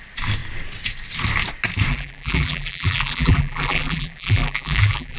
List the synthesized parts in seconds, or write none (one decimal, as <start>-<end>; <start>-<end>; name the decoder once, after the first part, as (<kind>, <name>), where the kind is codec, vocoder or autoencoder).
1.9-5.2 (vocoder, BigVGAN v2)